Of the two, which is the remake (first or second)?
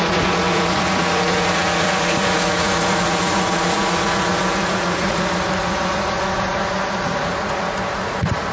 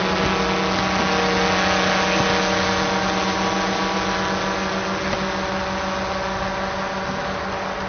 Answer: first